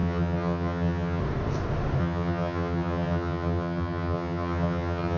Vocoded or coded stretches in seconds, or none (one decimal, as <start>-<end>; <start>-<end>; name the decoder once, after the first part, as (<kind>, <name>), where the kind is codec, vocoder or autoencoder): 0.0-1.2 (vocoder, HiFi-GAN); 2.0-5.2